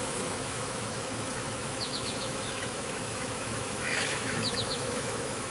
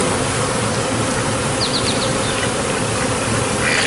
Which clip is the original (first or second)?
second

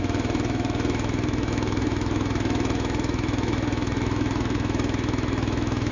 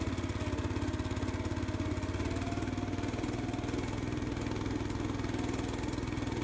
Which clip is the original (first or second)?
second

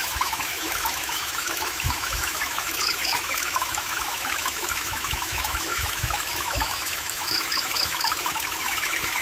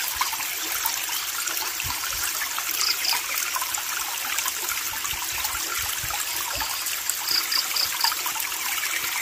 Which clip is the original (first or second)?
second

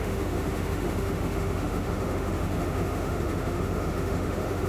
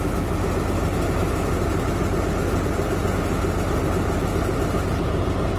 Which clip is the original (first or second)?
second